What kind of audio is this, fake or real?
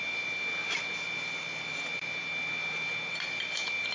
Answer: real